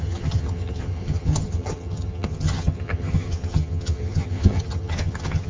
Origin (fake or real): fake